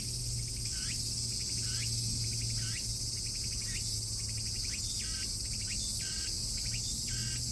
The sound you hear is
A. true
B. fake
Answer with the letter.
A